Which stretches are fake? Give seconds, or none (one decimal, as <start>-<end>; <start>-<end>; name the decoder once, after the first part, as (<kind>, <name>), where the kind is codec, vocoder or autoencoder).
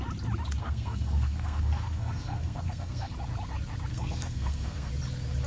0.6-3.1 (codec, SNAC); 3.9-4.9